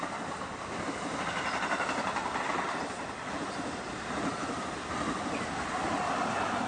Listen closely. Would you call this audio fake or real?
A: real